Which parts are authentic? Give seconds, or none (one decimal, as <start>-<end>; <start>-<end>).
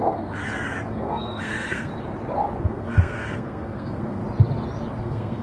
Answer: 0.4-0.9; 1.9-2.6; 4.2-5.0